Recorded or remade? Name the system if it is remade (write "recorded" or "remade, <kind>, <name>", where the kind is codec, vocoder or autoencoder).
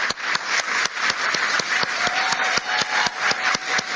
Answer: recorded